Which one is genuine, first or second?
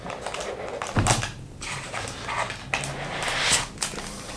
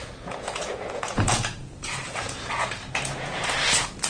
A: first